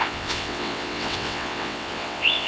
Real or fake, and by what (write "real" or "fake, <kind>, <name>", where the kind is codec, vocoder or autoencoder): fake, vocoder, WaveNeXt